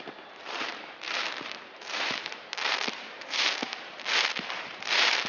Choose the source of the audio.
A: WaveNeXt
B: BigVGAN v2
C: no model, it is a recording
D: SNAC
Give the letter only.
B